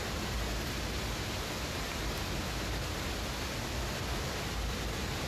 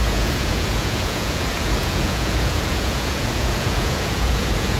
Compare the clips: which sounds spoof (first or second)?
second